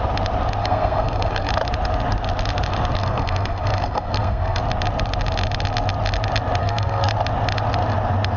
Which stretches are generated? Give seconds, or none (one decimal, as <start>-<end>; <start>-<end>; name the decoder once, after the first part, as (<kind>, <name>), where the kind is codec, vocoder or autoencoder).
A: 0.6-1.5 (codec, SNAC); 3.0-4.6; 6.6-7.1